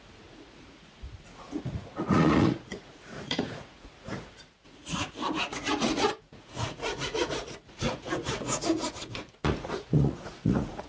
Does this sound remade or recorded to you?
remade